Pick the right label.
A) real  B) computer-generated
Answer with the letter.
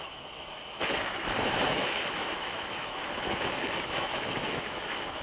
B